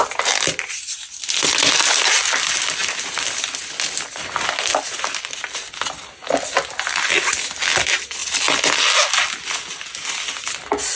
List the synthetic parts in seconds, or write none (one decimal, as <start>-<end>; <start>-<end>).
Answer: none

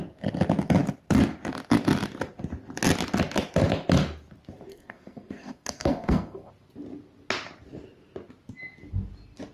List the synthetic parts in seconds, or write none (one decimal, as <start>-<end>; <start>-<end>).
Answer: 4.7-6.5

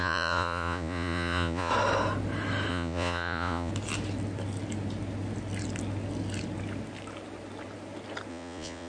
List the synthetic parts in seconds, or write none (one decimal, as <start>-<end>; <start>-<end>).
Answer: 0.0-1.7; 2.7-3.7; 8.3-8.9

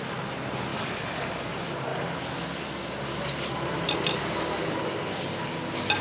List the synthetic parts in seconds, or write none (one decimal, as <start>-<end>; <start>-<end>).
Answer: none

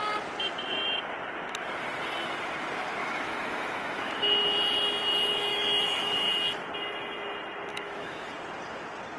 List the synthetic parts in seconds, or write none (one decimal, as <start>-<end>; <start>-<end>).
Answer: 3.0-4.1; 5.5-6.3; 7.7-8.3

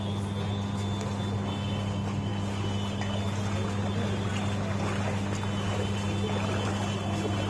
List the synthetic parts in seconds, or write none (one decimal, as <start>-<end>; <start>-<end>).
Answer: none